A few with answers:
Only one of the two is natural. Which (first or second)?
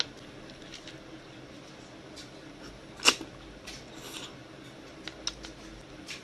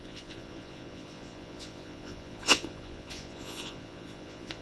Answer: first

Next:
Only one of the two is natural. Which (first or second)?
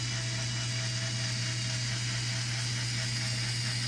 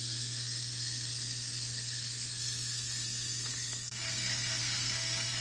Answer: first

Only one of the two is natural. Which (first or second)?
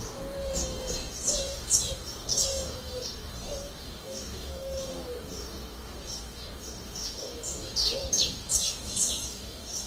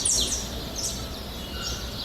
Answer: second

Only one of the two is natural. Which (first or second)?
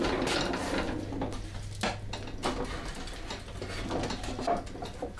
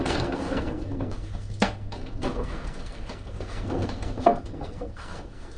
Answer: first